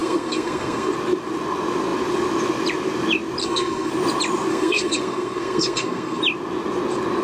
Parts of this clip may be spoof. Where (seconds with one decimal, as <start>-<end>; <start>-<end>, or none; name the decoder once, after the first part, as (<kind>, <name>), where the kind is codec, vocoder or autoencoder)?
0.0-0.9 (codec, SNAC); 3.4-3.9; 4.5-6.2